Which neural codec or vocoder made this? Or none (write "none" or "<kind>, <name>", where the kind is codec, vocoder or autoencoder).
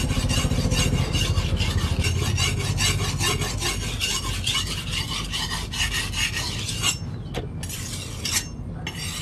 none